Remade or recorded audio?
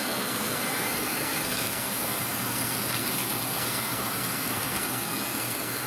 remade